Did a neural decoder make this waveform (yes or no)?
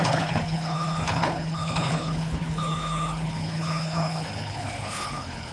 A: yes